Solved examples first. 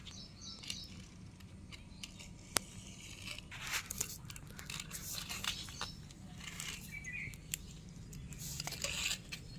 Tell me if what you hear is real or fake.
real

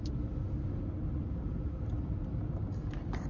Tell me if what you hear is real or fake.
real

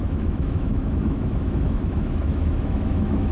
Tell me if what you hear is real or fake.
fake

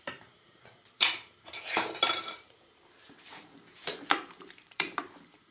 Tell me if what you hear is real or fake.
fake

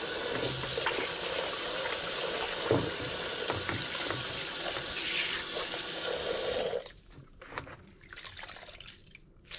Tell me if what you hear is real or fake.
real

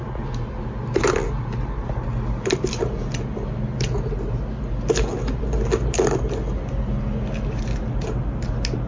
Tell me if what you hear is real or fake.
real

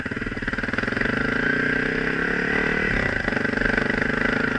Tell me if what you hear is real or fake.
real